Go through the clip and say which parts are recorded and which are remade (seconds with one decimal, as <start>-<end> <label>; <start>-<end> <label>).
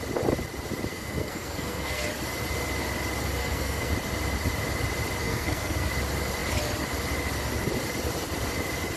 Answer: 0.0-0.9 recorded; 0.9-2.1 remade; 2.1-3.4 recorded; 3.4-3.9 remade; 3.9-5.2 recorded; 5.2-5.9 remade; 5.9-9.0 recorded